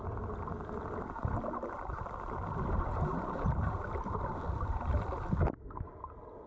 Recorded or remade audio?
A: recorded